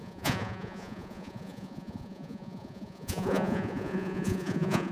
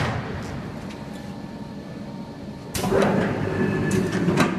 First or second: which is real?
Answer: second